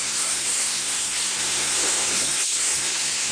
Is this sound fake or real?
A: fake